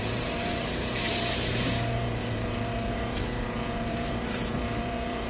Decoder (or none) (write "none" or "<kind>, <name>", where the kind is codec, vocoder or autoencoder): vocoder, BigVGAN v2